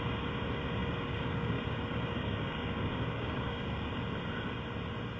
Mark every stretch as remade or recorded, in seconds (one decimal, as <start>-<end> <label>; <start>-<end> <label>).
0.0-0.8 recorded; 0.8-3.9 remade; 3.9-5.2 recorded